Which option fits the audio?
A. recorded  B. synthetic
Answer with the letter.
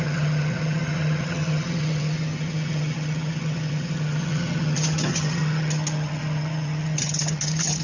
B